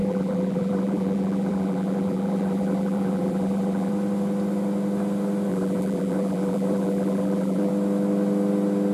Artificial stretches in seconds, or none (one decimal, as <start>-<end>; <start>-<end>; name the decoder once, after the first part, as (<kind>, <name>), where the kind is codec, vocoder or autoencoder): 0.0-3.9 (vocoder, BigVGAN v2); 5.5-7.7